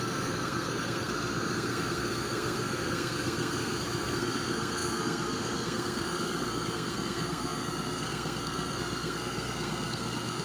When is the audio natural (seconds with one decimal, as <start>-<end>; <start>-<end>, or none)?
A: none